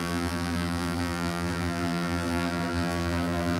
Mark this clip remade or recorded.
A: remade